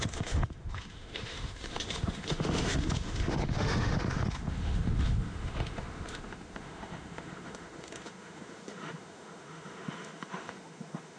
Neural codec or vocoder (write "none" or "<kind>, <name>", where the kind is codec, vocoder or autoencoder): autoencoder, DAC-VAE